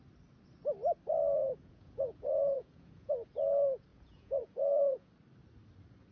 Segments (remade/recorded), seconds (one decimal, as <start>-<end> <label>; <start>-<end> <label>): 0.0-1.4 recorded; 1.4-3.1 remade; 3.1-3.9 recorded; 3.9-5.1 remade; 5.1-6.1 recorded